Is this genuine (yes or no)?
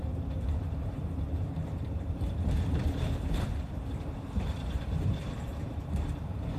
no